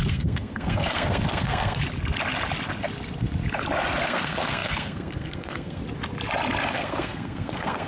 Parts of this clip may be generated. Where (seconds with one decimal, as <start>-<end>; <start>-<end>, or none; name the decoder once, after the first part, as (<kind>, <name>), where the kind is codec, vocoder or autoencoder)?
0.0-1.8 (codec, SNAC); 4.0-5.8; 6.7-7.9

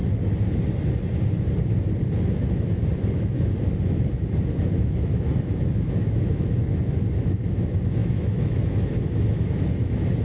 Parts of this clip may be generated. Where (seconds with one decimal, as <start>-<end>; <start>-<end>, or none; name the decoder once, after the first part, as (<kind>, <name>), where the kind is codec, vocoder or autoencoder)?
2.3-10.2 (autoencoder, DAC-VAE)

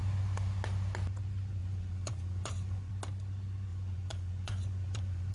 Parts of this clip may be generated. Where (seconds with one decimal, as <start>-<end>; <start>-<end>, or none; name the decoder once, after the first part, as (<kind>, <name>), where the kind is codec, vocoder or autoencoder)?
1.6-2.9 (vocoder, Vocos); 3.7-5.3